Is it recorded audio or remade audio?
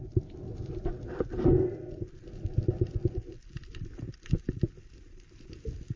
recorded